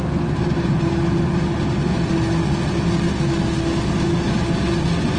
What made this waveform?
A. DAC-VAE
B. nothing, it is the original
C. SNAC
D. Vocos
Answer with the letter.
B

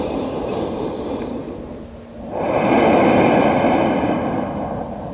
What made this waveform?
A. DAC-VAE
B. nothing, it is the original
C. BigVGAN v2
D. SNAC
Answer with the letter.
C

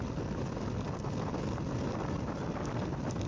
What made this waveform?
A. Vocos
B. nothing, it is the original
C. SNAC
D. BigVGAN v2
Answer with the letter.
B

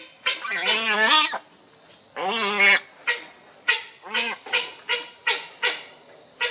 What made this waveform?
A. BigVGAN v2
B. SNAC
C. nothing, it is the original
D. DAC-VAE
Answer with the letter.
C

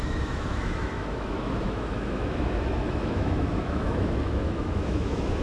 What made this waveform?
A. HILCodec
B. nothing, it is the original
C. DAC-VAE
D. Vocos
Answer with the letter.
C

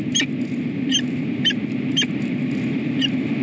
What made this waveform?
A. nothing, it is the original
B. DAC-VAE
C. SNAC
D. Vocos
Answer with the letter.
A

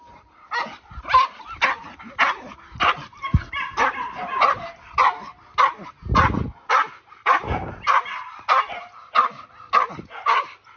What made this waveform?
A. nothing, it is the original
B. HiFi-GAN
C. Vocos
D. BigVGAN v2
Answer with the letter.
A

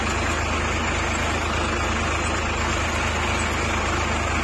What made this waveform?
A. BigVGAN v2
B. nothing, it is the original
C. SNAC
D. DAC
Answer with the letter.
B